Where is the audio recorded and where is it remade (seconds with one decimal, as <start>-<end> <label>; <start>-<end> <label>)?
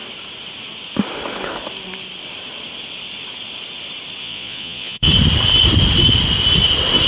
0.0-4.2 recorded; 4.2-5.1 remade; 5.1-7.1 recorded